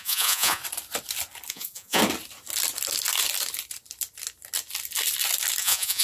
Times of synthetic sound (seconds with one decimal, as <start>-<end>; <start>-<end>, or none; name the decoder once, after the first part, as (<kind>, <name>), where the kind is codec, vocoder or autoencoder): 0.0-0.6 (vocoder, Vocos); 1.5-2.0; 5.6-6.0